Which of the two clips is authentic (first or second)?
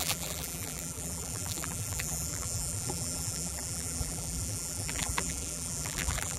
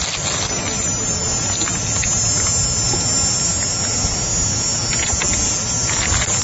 second